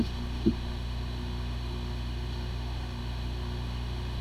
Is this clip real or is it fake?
fake